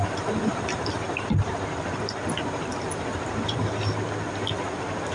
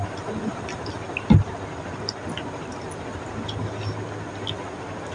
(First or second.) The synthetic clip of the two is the first